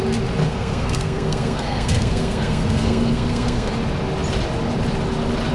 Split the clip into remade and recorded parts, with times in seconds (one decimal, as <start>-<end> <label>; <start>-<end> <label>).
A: 0.0-0.4 recorded; 0.4-3.7 remade; 3.7-5.5 recorded